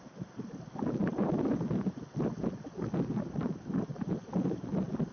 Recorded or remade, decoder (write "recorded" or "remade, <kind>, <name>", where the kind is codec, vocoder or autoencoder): recorded